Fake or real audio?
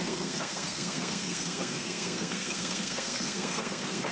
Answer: fake